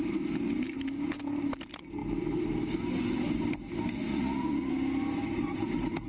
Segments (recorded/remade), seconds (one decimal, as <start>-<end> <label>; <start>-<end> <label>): 0.0-4.1 recorded; 4.1-4.7 remade; 4.7-6.1 recorded